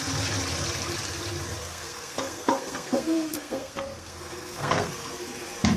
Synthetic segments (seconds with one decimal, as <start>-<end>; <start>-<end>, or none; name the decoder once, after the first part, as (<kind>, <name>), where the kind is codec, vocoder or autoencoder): 1.6-5.1 (codec, SNAC)